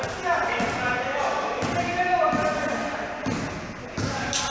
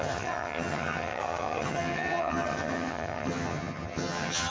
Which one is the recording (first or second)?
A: first